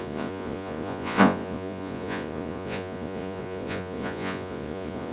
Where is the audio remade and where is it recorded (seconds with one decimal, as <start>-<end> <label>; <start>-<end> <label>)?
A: 0.0-5.1 remade